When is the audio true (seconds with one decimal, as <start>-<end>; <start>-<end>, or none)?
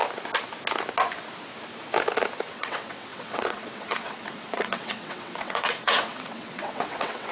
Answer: 0.0-2.5